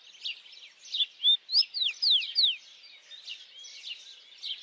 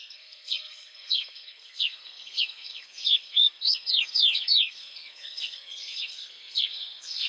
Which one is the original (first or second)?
first